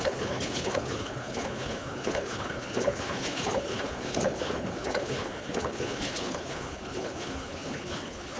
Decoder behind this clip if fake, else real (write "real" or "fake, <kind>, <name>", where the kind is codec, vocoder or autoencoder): fake, codec, HILCodec